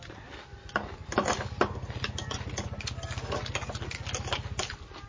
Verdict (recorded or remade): recorded